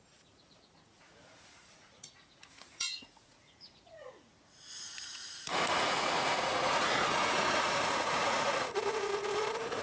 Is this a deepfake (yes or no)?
yes